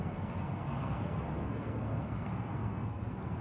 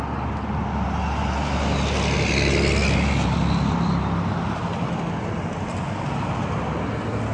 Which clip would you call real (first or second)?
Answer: second